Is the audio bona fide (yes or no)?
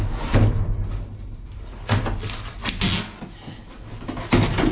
yes